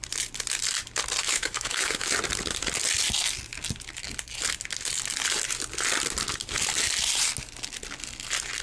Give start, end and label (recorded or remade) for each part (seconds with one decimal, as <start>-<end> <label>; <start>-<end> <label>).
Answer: 0.0-1.2 recorded; 1.2-2.1 remade; 2.1-8.6 recorded